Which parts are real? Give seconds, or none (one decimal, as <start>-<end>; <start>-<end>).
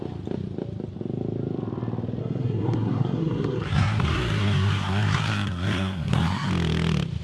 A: 0.0-2.2; 6.5-7.2